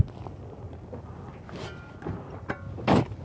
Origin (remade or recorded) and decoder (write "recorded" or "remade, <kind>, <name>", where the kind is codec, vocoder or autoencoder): recorded